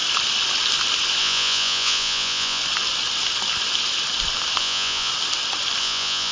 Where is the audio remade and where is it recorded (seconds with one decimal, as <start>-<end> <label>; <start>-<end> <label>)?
0.0-1.2 recorded; 1.2-2.6 remade; 2.6-4.6 recorded; 4.6-5.1 remade; 5.1-5.8 recorded; 5.8-6.3 remade